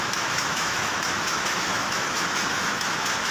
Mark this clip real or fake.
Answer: fake